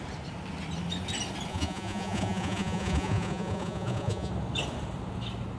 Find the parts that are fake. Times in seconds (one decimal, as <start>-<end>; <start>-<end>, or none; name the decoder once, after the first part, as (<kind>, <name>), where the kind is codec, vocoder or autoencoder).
1.5-4.3 (vocoder, Vocos)